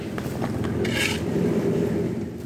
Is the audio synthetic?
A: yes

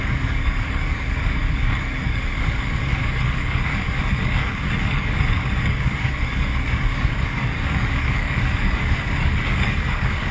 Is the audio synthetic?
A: yes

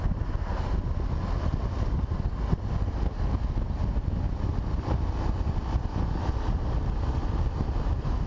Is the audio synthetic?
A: no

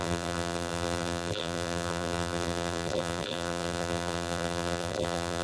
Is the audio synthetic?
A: yes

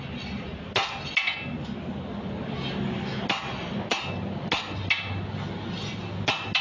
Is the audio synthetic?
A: no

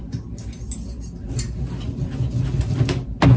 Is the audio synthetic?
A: no